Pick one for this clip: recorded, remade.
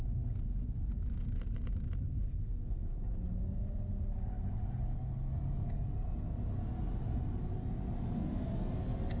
recorded